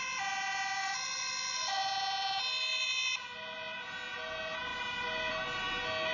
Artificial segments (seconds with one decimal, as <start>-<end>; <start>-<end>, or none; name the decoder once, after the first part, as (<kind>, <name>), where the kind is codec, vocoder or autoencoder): 0.8-1.8 (vocoder, Vocos)